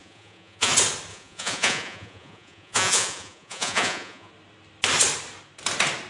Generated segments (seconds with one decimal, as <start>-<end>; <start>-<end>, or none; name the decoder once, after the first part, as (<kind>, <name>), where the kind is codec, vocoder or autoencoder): 0.0-0.7 (vocoder, Vocos); 1.1-4.3